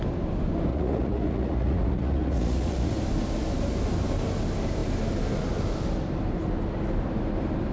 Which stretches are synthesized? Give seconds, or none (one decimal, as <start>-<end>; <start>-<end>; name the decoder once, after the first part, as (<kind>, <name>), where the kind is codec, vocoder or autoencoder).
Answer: 0.7-2.9 (vocoder, Vocos)